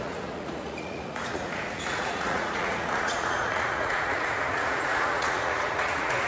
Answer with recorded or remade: remade